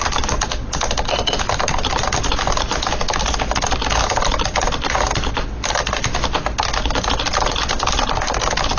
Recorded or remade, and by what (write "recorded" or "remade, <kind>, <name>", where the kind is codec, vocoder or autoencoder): recorded